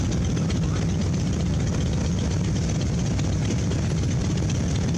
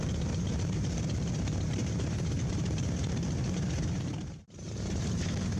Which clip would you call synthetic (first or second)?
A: second